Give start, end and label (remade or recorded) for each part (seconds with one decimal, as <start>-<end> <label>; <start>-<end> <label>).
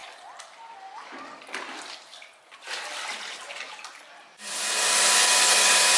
0.0-6.0 recorded